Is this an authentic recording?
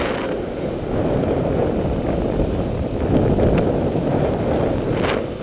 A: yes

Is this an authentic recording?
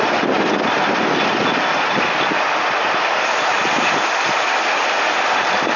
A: yes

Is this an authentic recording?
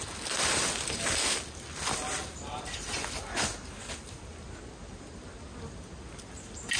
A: yes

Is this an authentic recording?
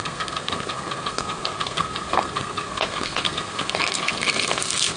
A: no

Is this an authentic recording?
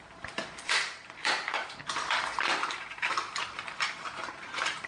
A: no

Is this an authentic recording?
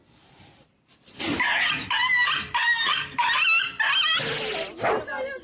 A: yes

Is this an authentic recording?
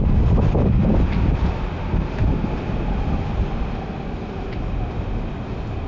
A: yes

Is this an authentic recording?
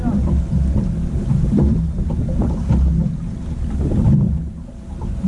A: yes